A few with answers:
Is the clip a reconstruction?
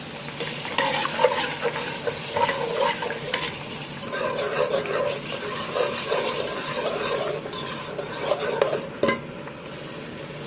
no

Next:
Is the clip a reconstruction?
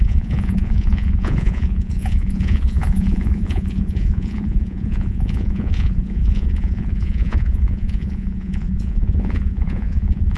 yes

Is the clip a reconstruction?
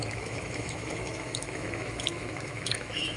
yes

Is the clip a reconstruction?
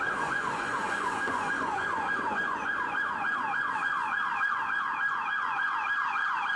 yes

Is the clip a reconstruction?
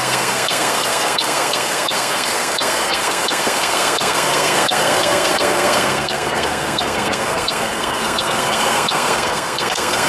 yes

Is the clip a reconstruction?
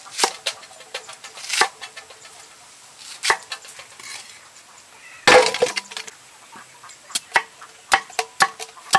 no